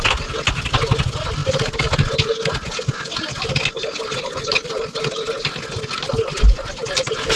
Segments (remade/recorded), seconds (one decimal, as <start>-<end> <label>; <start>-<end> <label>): 0.0-7.4 recorded